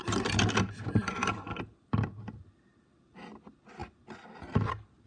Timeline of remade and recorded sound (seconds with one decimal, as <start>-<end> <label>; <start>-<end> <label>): 0.0-5.1 recorded

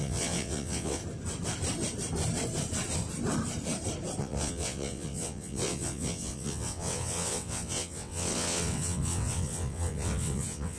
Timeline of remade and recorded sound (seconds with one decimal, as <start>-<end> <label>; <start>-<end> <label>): 0.0-1.0 remade; 1.0-4.2 recorded; 4.2-10.8 remade

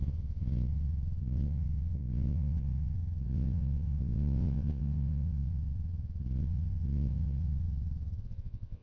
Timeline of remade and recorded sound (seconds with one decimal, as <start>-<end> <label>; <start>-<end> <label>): 0.0-8.8 remade

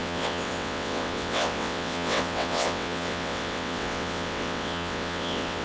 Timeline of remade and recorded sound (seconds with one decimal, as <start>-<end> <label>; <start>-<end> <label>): 0.0-5.6 remade

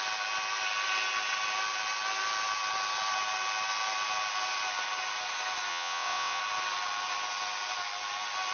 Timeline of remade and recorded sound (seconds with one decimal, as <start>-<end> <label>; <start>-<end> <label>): 0.0-5.7 recorded; 5.7-6.4 remade; 6.4-8.5 recorded

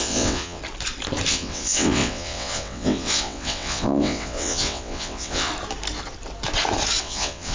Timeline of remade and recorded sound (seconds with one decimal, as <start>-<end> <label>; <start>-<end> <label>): 0.0-0.6 remade; 0.6-1.3 recorded; 1.3-5.5 remade; 5.5-7.0 recorded; 7.0-7.5 remade

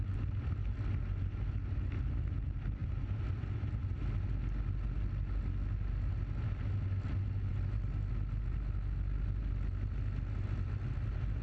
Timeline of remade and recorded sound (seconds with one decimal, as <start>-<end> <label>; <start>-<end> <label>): 0.0-11.4 recorded

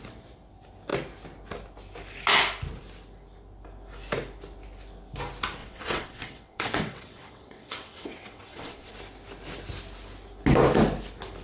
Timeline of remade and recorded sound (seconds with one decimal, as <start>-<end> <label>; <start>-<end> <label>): 0.0-5.6 recorded; 5.6-8.9 remade; 8.9-11.4 recorded